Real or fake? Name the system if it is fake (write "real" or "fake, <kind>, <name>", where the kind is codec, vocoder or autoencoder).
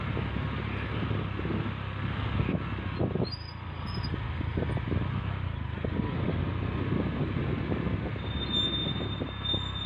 real